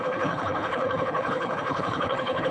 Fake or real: fake